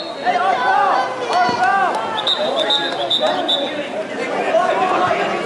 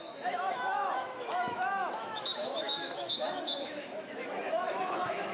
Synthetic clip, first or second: second